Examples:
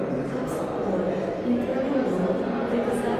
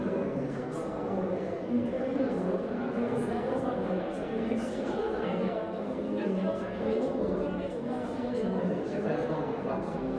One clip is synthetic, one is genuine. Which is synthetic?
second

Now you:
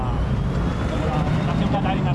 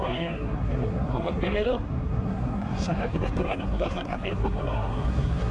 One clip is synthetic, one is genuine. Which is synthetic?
second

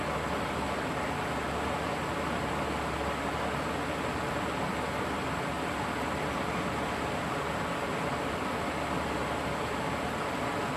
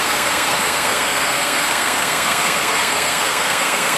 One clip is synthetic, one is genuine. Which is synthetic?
second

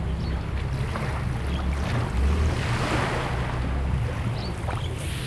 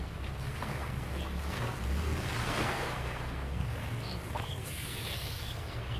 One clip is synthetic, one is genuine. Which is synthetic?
second